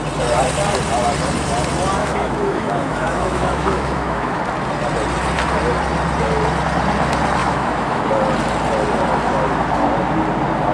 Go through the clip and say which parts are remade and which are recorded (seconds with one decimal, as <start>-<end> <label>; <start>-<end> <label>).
0.0-2.0 recorded; 2.0-4.4 remade; 4.4-7.4 recorded; 7.4-8.0 remade; 8.0-10.7 recorded